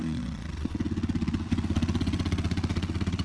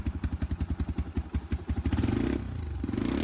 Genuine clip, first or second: second